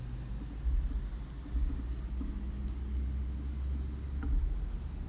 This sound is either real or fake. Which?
real